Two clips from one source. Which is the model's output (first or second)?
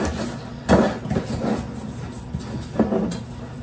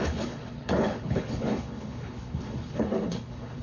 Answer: second